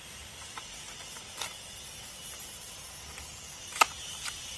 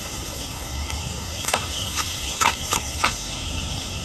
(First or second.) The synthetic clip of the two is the second